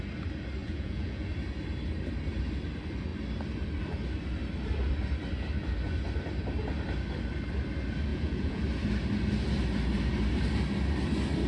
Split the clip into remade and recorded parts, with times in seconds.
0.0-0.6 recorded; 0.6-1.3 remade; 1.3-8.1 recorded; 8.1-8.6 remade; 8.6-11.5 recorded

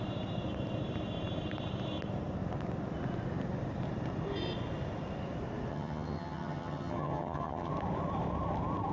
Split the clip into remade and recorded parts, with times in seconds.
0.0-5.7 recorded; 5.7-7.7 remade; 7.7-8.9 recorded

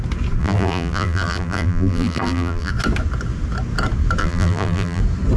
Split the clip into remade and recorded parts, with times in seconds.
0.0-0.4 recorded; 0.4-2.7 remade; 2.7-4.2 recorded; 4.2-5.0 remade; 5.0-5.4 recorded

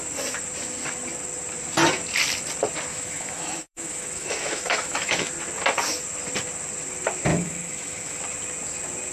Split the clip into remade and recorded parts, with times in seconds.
0.0-2.9 recorded; 2.9-5.3 remade; 5.3-7.3 recorded; 7.3-8.2 remade; 8.2-9.1 recorded

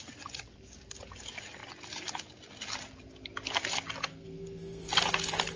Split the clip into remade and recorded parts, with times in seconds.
0.0-4.1 recorded; 4.1-4.9 remade; 4.9-5.6 recorded

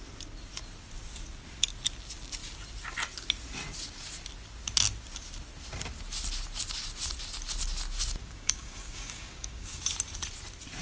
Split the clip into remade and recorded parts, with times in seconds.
0.0-8.2 recorded; 8.2-9.8 remade; 9.8-10.8 recorded